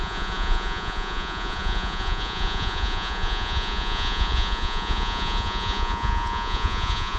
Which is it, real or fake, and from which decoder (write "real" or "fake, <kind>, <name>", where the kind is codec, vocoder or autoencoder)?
fake, vocoder, Vocos